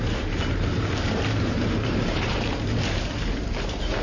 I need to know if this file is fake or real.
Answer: fake